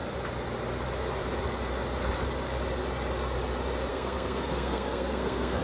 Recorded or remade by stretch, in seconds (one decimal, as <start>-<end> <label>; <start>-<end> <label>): 0.0-3.9 recorded; 3.9-5.6 remade